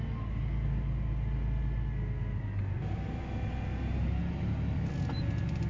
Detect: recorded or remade recorded